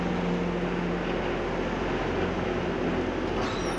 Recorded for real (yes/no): yes